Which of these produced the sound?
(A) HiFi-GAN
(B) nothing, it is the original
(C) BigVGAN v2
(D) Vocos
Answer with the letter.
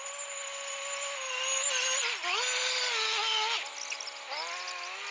B